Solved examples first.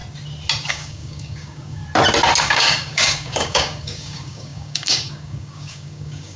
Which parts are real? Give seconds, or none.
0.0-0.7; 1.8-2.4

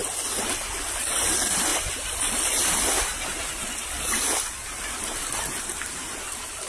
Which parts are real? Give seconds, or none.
0.0-6.7

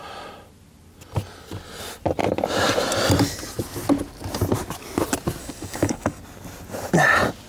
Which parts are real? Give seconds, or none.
0.0-5.4; 6.2-7.5

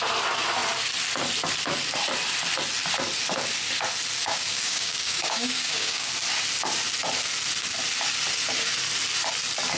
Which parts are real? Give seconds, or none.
0.0-4.2; 6.1-9.8

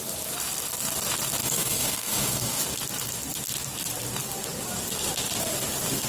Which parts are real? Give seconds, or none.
0.0-1.4; 2.6-6.1

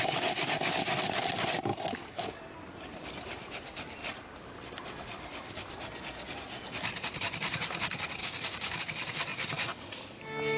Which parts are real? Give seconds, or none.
0.0-8.2; 8.8-10.6